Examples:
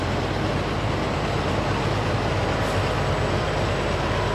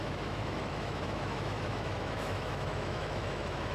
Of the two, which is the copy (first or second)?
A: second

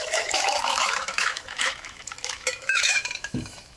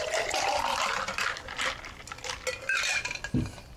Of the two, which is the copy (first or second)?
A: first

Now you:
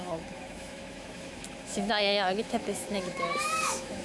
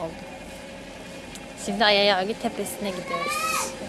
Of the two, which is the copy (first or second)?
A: first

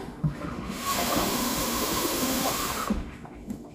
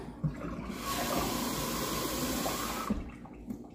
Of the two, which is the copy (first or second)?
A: first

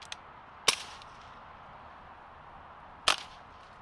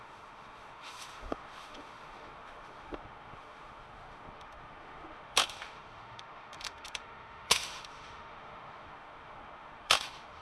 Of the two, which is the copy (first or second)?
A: second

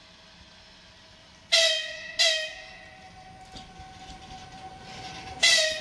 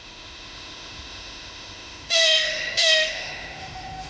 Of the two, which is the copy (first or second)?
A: second